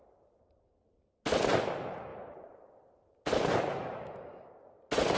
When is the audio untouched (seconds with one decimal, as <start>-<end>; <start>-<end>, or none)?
0.0-5.2